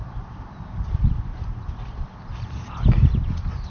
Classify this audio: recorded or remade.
recorded